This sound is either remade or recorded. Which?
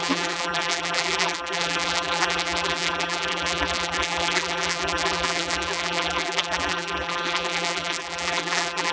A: remade